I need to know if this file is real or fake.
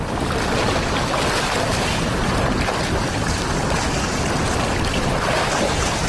real